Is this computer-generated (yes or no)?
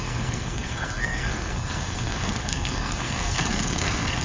yes